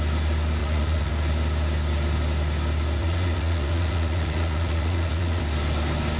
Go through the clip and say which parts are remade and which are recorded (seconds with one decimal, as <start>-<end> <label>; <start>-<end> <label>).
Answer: 0.0-0.6 recorded; 0.6-1.1 remade; 1.1-3.0 recorded; 3.0-5.4 remade; 5.4-6.2 recorded